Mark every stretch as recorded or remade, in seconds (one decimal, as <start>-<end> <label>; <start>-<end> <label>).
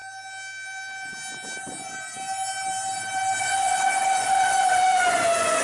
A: 0.0-3.4 recorded; 3.4-5.6 remade